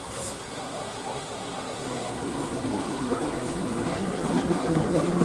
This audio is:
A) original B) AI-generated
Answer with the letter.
B